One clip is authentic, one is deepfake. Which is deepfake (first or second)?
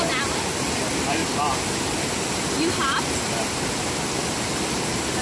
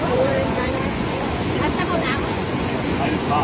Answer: second